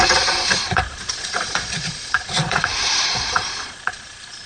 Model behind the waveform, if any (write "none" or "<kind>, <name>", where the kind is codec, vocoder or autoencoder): vocoder, Vocos